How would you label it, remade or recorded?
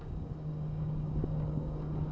remade